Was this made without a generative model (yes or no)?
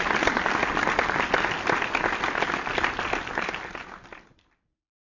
yes